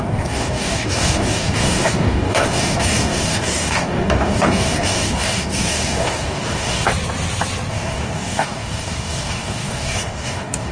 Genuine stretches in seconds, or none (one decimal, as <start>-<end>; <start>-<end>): 6.9-7.7

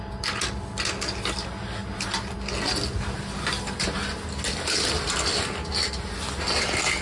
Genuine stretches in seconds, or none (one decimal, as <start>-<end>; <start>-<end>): 0.0-7.0

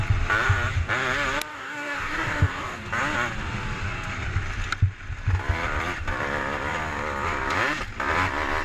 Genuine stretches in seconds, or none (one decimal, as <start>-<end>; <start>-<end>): 0.0-1.5; 2.9-8.6

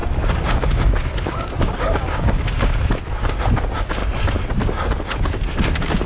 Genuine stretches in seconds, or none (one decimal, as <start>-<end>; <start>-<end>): 2.9-6.1

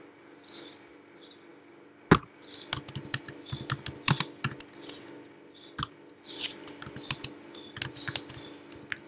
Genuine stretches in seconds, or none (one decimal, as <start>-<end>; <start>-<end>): 0.0-9.1

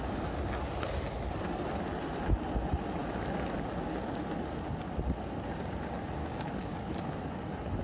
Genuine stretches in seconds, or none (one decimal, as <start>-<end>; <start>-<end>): 0.0-6.2; 7.2-7.8

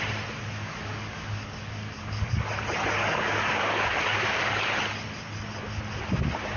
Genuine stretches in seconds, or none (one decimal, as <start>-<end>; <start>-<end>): 0.0-0.6; 2.3-3.0; 4.7-6.6